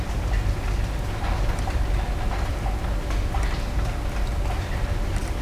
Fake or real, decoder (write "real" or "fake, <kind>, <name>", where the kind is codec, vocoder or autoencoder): real